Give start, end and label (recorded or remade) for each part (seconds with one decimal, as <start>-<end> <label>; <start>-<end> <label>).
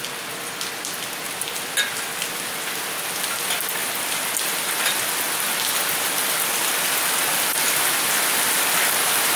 0.0-9.4 recorded